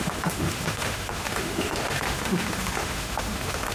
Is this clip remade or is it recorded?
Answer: remade